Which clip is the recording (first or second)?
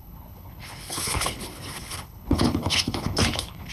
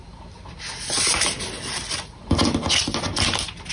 second